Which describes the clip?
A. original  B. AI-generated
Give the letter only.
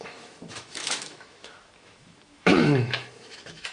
B